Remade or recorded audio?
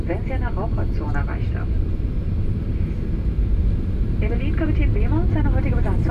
recorded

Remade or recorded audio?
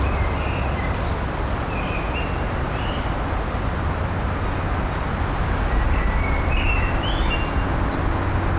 recorded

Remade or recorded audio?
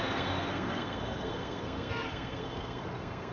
remade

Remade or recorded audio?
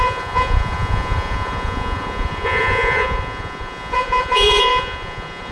remade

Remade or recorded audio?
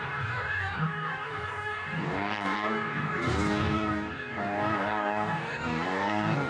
remade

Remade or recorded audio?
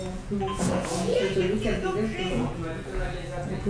remade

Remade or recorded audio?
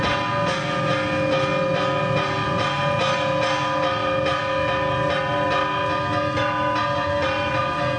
recorded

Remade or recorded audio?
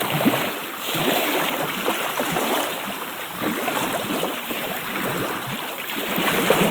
remade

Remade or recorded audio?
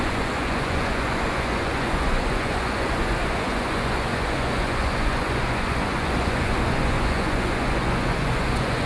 remade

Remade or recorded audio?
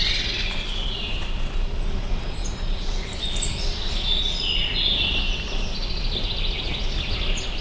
recorded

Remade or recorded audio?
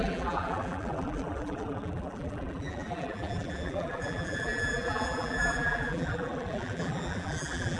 remade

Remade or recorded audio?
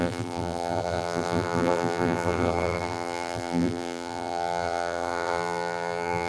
remade